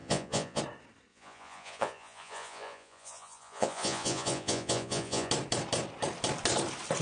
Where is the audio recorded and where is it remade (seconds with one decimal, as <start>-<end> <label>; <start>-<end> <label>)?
0.0-0.6 remade; 0.6-1.1 recorded; 1.1-5.3 remade; 5.3-7.0 recorded